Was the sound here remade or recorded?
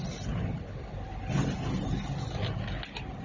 recorded